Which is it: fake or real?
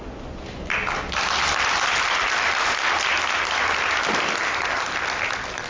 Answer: real